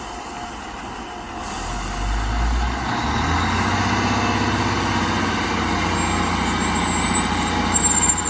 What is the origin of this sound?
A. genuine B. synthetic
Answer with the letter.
A